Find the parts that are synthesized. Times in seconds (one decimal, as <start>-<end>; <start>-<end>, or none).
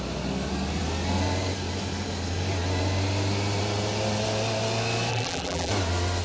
5.1-5.7